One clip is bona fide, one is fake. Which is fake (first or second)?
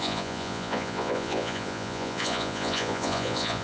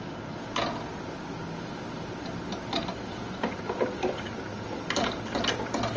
first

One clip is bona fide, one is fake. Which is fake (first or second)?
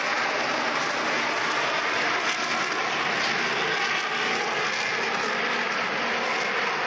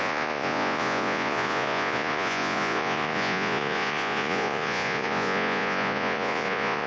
second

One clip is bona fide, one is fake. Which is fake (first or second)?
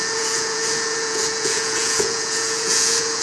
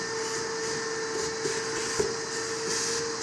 first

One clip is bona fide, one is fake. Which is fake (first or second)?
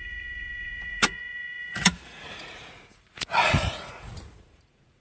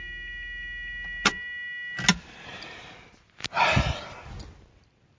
first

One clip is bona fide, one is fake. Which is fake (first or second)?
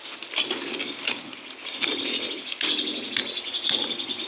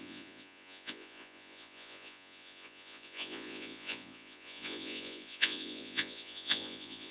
second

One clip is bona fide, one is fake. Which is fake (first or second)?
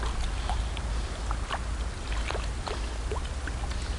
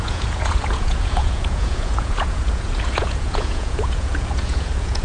second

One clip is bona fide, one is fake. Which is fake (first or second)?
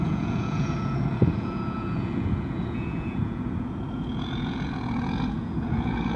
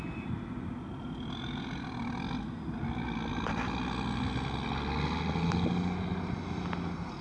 first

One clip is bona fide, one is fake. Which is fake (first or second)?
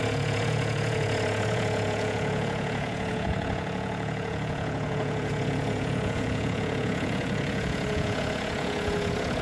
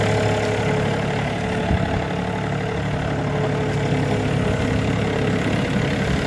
first